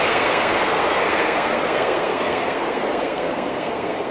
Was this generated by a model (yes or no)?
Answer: yes